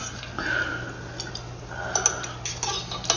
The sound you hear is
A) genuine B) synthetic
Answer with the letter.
A